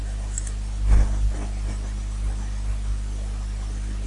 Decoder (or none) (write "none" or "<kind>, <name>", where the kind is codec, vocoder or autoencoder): none